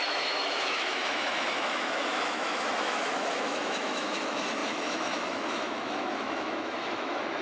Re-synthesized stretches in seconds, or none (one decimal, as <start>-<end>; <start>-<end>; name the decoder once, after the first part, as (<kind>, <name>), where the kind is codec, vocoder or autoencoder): 0.0-7.4 (autoencoder, DAC-VAE)